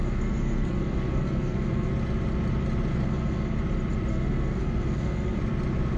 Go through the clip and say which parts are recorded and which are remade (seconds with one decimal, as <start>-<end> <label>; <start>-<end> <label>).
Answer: 0.0-1.9 remade; 1.9-2.9 recorded; 2.9-3.6 remade; 3.6-4.1 recorded; 4.1-5.4 remade; 5.4-6.0 recorded